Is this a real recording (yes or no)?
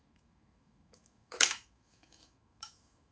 no